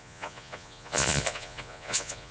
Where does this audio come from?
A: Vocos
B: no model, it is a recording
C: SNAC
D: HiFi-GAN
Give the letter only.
A